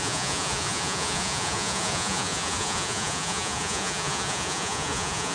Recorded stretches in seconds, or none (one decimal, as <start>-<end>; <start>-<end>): none